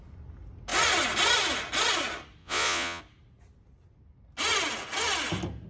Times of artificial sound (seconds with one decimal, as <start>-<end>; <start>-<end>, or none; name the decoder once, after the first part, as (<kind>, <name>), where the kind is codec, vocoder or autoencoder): 2.4-3.0 (vocoder, Vocos)